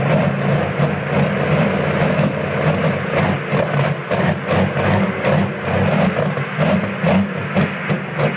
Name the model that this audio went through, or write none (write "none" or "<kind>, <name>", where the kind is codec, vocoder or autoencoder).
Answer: none